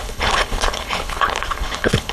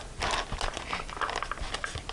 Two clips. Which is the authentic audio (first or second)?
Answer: second